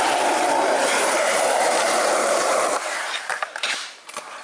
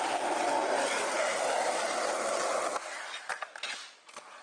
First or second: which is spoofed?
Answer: first